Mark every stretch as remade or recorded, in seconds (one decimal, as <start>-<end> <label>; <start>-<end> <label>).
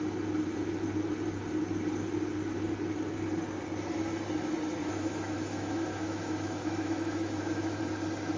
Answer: 0.0-4.8 recorded; 4.8-7.8 remade; 7.8-8.4 recorded